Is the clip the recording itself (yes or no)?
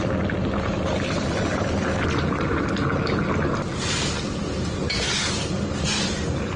yes